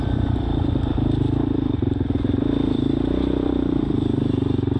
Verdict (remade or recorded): remade